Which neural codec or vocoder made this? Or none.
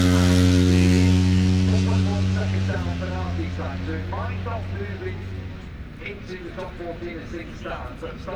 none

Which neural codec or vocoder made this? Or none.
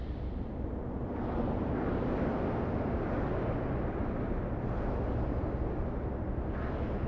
none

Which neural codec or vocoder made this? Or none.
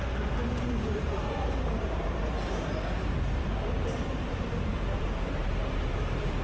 vocoder, BigVGAN v2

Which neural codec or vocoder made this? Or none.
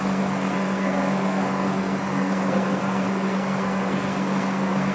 codec, SNAC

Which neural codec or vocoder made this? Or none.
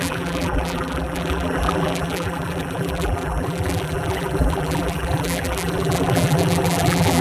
vocoder, BigVGAN v2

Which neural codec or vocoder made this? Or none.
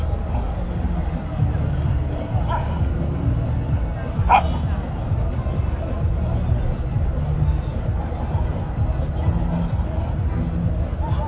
none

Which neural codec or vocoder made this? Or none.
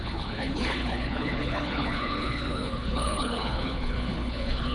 codec, HILCodec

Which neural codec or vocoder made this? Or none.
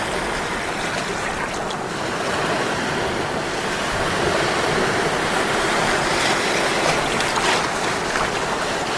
none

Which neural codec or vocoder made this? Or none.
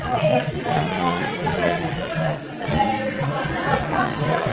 vocoder, Vocos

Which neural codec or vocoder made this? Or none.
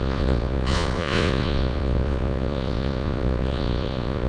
vocoder, Vocos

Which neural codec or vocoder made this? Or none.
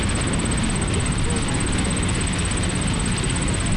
none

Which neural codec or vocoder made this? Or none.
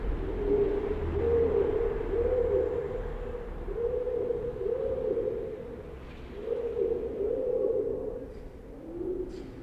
none